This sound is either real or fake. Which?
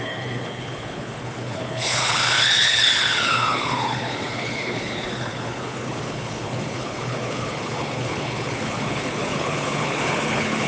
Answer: fake